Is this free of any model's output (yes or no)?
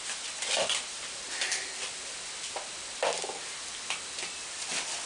yes